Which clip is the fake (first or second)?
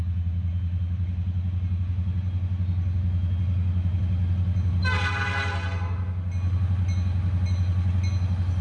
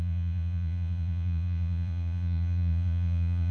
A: second